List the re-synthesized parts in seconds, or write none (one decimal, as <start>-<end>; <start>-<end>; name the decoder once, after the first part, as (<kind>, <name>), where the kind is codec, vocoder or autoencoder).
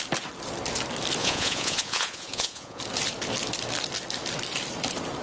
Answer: 1.2-2.8 (vocoder, Vocos)